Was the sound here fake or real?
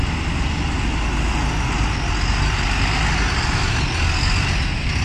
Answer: real